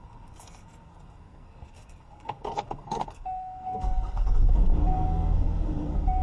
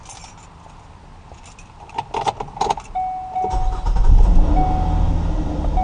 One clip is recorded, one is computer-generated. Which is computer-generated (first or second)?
first